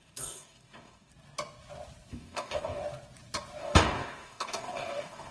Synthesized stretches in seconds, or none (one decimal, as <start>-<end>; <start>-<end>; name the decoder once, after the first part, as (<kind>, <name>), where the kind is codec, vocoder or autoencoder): 0.0-1.1 (codec, DAC); 2.1-2.8; 3.6-5.3